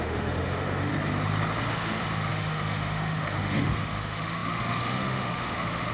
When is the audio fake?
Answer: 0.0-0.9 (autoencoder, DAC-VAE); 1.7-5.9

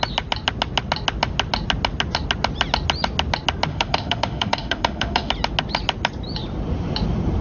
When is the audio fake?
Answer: 3.7-5.3 (autoencoder, DAC-VAE)

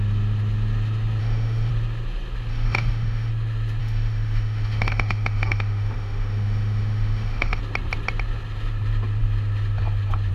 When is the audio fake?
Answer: 1.2-1.7 (autoencoder, DAC-VAE); 2.5-3.3; 3.8-7.6